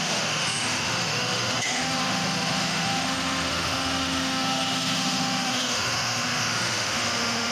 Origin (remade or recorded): remade